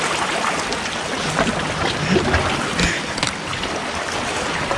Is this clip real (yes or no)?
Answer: yes